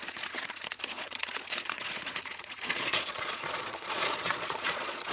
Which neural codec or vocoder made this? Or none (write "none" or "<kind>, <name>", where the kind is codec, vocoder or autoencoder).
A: vocoder, Vocos